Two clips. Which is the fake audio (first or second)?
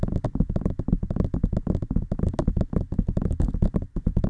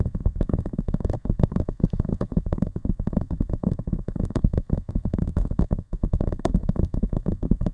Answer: second